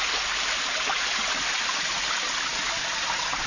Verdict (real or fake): real